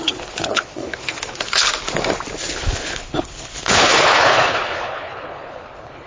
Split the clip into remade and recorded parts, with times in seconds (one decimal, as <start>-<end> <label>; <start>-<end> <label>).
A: 0.0-1.7 remade; 1.7-2.5 recorded; 2.5-6.1 remade

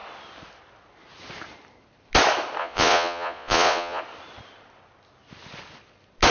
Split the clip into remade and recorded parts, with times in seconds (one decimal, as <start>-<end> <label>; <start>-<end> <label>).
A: 0.0-2.6 recorded; 2.6-4.0 remade; 4.0-6.3 recorded

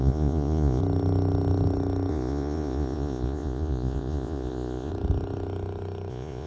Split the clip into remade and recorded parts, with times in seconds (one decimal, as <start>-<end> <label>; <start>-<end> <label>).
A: 0.0-0.8 remade; 0.8-2.1 recorded; 2.1-4.9 remade; 4.9-6.1 recorded; 6.1-6.5 remade

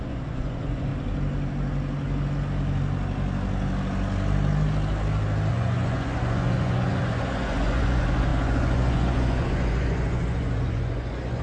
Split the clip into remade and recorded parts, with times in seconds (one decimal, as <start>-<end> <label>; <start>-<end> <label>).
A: 0.0-0.9 remade; 0.9-5.5 recorded; 5.5-11.4 remade

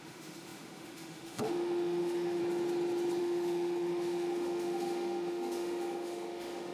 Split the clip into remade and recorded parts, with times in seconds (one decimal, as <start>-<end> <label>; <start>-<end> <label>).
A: 0.0-2.4 remade; 2.4-3.2 recorded; 3.2-6.7 remade

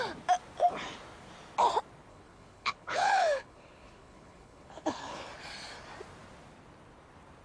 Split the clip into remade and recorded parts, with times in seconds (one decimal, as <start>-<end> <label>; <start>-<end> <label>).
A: 0.0-2.1 recorded; 2.1-5.3 remade; 5.3-7.4 recorded

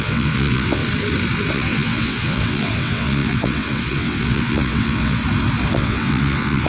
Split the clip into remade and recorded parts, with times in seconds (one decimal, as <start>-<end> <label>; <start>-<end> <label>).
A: 0.0-0.8 remade; 0.8-1.5 recorded; 1.5-5.2 remade; 5.2-5.7 recorded; 5.7-6.7 remade